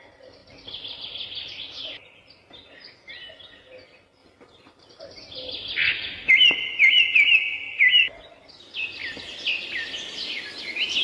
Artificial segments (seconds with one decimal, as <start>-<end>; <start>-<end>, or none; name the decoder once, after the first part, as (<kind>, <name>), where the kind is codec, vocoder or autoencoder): none